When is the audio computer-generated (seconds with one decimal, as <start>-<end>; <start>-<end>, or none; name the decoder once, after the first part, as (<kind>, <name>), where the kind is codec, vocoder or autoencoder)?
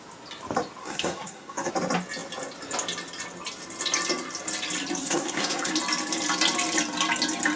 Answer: 0.8-1.7 (codec, SNAC); 5.0-5.7